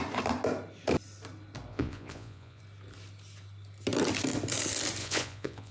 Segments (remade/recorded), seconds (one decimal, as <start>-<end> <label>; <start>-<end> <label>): 0.0-1.7 recorded; 1.7-2.6 remade; 2.6-5.0 recorded; 5.0-5.7 remade